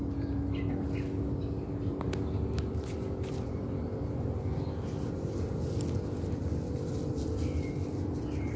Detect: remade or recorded recorded